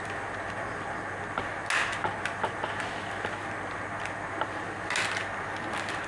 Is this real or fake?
real